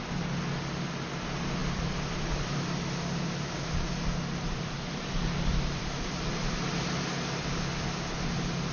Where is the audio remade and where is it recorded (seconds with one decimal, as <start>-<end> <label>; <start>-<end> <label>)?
0.0-1.6 recorded; 1.6-6.7 remade; 6.7-8.7 recorded